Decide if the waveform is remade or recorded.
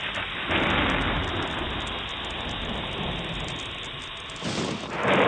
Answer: recorded